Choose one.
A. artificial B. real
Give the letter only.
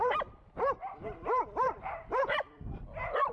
B